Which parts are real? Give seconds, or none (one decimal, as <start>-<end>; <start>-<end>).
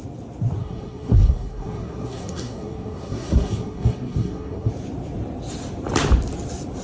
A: 0.0-0.6; 4.7-6.8